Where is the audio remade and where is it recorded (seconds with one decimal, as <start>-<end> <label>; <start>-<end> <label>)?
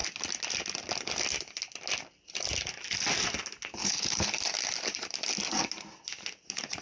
0.0-3.8 recorded; 3.8-4.3 remade; 4.3-6.8 recorded